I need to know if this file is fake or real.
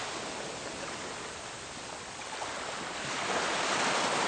real